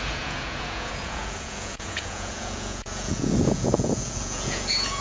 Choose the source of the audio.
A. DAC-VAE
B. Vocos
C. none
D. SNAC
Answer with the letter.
B